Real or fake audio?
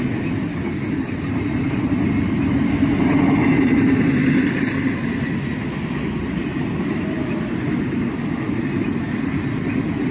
real